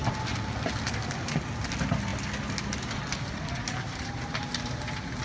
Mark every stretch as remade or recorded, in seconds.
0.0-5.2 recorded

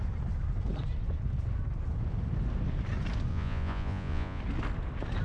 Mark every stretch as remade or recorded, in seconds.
0.0-3.3 recorded; 3.3-4.4 remade; 4.4-5.2 recorded

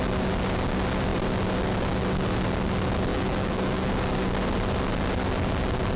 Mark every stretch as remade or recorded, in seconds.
0.0-3.1 recorded; 3.1-3.9 remade; 3.9-6.0 recorded

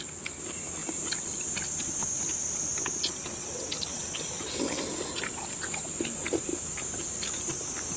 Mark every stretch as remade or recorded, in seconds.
0.0-8.0 recorded

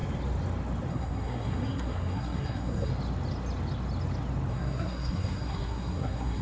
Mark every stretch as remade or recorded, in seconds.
0.0-0.9 recorded; 0.9-2.9 remade; 2.9-4.5 recorded; 4.5-6.4 remade